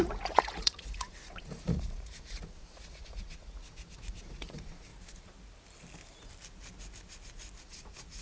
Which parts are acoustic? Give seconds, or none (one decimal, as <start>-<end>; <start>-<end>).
4.9-7.6